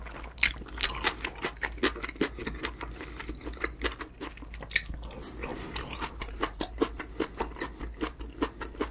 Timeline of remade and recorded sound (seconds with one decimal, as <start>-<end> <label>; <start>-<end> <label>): 0.0-5.5 recorded; 5.5-6.7 remade; 6.7-8.9 recorded